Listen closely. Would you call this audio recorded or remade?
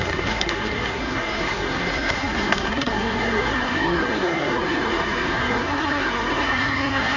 remade